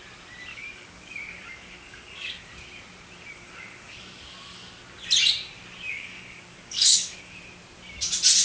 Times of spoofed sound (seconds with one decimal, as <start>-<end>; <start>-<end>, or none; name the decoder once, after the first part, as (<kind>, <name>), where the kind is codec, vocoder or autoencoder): 0.5-2.5 (codec, DAC); 3.3-4.8; 5.9-7.4